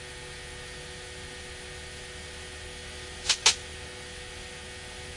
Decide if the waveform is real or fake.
real